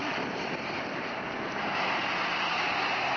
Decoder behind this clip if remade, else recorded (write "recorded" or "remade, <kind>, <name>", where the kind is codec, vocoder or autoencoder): remade, vocoder, BigVGAN v2